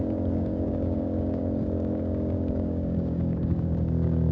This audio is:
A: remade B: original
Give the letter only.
A